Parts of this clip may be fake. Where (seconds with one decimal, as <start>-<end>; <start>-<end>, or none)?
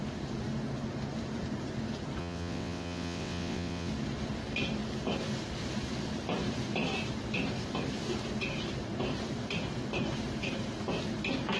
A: 2.2-3.9